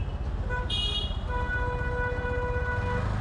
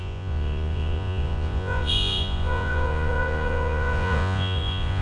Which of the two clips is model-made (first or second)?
second